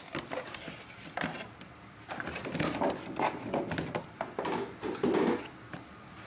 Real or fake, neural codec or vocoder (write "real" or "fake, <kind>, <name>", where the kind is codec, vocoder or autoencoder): real